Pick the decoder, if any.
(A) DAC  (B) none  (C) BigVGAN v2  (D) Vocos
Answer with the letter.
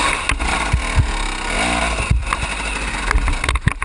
B